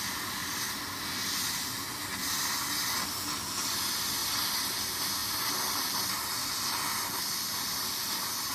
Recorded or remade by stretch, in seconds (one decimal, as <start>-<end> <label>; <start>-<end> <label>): 0.0-0.4 recorded; 0.4-1.4 remade; 1.4-4.2 recorded; 4.2-4.7 remade; 4.7-5.2 recorded; 5.2-8.5 remade